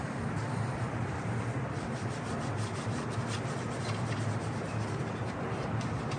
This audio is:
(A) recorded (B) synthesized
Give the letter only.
A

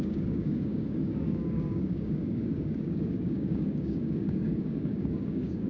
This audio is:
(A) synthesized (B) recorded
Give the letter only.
A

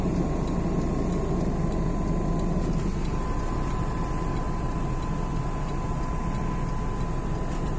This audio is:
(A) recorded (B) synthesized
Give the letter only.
A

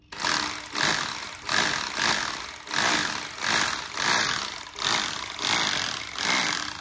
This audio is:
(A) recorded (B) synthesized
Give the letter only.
A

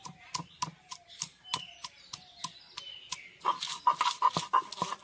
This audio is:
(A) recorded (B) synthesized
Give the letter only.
A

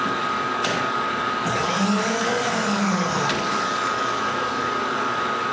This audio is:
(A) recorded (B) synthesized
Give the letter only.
B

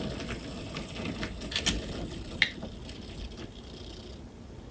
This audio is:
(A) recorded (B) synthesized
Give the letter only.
A